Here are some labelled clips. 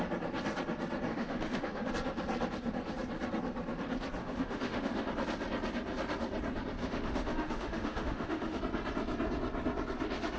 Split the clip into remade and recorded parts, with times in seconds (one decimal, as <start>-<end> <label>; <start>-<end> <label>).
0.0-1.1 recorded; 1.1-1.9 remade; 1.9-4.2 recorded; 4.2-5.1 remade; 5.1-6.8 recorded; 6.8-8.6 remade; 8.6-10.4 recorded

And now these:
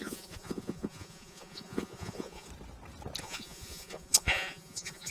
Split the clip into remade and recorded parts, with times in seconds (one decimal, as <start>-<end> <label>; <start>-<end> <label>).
0.0-2.5 remade; 2.5-3.2 recorded; 3.2-5.1 remade

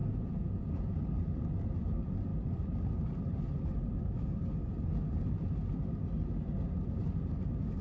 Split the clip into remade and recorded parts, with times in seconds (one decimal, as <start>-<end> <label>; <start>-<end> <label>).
0.0-0.9 remade; 0.9-7.8 recorded

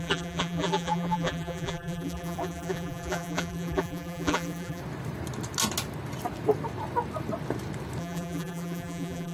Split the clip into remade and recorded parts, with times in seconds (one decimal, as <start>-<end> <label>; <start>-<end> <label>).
0.0-4.8 remade; 4.8-8.0 recorded; 8.0-9.3 remade